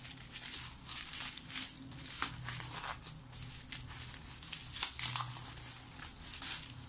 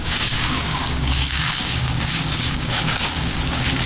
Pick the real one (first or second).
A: first